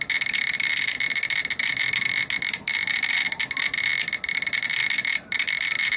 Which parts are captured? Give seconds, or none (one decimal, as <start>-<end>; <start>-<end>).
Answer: 0.0-4.8

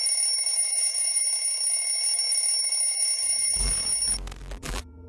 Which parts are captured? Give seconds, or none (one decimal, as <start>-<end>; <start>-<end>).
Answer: 0.0-0.5; 1.2-3.2; 3.7-4.4

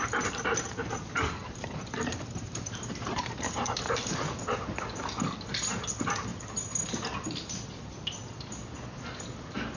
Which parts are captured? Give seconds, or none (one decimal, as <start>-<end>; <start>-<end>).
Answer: 4.2-9.8

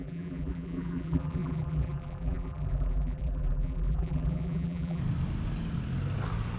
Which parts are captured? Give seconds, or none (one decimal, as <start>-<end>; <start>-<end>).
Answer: 5.0-6.6